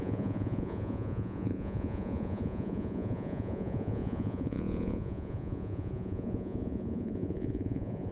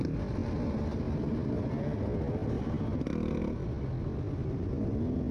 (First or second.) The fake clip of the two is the first